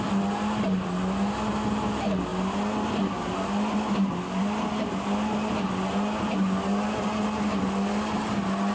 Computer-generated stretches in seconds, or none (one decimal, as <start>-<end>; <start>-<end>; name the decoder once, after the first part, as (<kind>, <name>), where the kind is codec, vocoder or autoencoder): none